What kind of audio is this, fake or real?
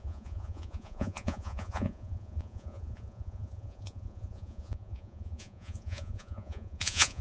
fake